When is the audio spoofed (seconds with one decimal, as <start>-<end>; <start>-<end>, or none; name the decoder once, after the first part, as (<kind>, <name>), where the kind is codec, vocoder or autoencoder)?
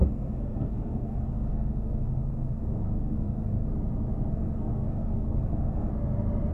0.0-3.7 (codec, SNAC); 4.3-5.9